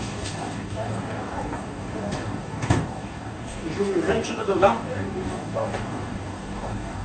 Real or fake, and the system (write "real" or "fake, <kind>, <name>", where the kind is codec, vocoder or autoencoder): fake, codec, DAC